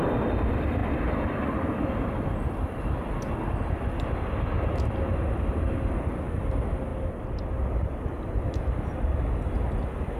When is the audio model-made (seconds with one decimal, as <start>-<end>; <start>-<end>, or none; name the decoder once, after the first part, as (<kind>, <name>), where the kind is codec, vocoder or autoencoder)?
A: none